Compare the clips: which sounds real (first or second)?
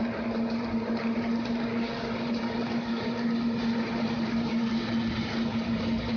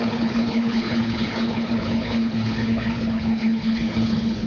first